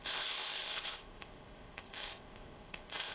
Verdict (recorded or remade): remade